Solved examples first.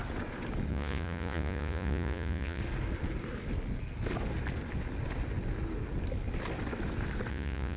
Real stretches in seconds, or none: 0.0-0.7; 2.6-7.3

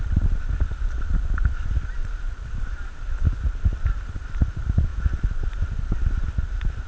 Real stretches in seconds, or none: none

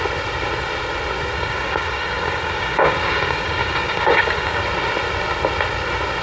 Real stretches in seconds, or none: 0.0-1.3; 4.6-6.2

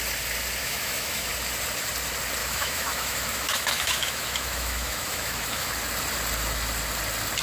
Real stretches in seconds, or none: 0.0-0.6; 1.3-2.4; 5.7-7.4

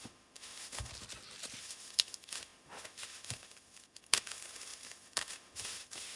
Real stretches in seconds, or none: 0.9-1.6

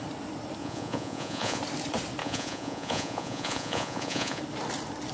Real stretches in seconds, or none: 0.0-0.6; 1.6-2.2; 4.4-5.1